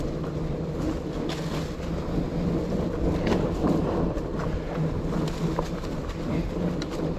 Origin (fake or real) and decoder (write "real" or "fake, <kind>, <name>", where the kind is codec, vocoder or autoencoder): real